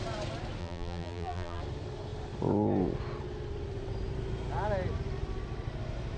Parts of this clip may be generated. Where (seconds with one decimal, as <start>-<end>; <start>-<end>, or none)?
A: 0.6-1.6